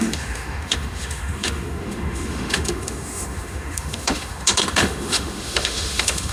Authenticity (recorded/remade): remade